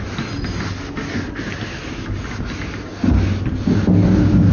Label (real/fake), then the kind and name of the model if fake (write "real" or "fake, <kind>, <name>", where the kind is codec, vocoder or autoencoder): real